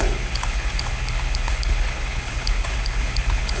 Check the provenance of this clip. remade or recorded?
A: remade